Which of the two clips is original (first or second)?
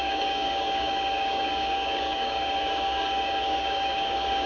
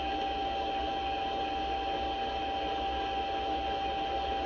second